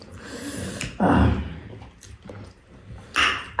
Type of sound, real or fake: fake